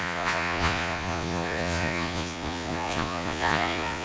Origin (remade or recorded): remade